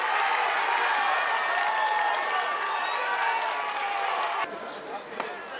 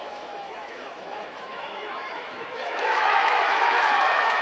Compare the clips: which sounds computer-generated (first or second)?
second